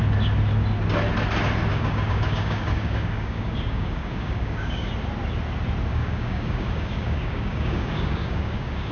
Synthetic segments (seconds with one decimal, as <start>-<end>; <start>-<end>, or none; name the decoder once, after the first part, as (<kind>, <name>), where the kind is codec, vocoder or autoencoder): 1.7-4.9 (codec, DAC); 5.9-8.9